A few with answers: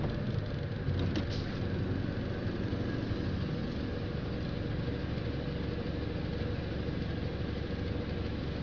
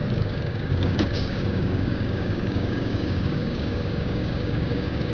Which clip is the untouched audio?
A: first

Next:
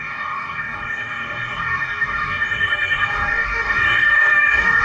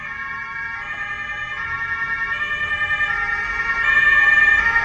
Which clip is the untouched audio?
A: second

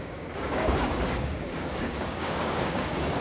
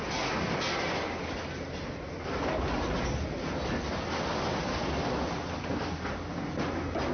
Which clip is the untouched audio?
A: second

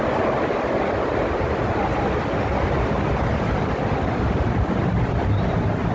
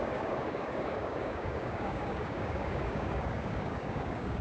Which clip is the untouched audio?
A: first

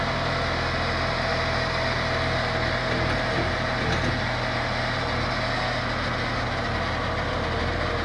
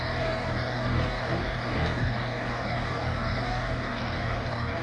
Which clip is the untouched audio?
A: first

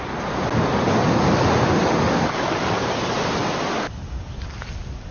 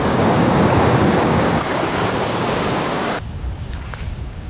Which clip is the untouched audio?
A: first